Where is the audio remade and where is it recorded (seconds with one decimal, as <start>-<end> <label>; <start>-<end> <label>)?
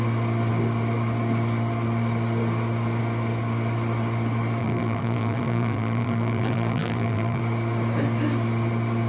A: 0.0-4.6 recorded; 4.6-7.4 remade; 7.4-9.1 recorded